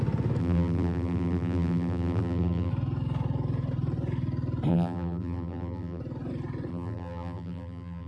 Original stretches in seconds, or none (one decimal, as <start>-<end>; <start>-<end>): 0.0-0.4; 2.7-4.7; 6.0-6.7

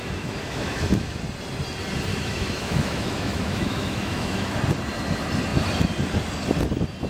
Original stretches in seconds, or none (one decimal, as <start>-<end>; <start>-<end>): 1.2-2.1; 4.6-7.1

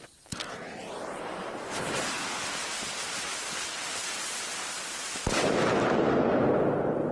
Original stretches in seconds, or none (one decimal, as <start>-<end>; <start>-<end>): 0.0-7.1

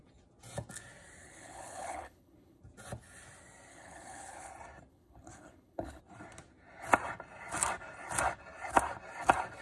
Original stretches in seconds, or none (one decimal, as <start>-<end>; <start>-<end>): 0.0-1.2; 2.6-3.7; 4.5-4.9; 6.0-9.6

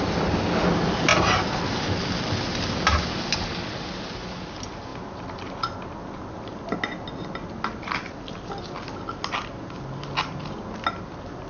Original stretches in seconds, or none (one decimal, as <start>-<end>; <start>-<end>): 0.0-11.5

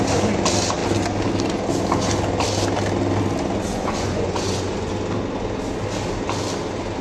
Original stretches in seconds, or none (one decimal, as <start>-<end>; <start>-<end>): 0.0-3.7; 4.9-7.0

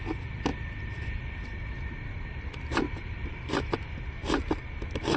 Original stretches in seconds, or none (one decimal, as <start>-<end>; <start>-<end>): 0.0-0.5; 3.6-5.2